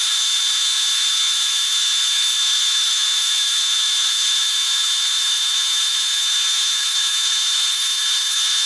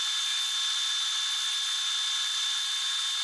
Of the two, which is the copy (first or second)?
first